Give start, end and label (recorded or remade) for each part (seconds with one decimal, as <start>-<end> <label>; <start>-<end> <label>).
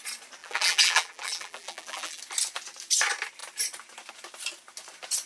0.0-0.4 recorded; 0.4-2.2 remade; 2.2-5.3 recorded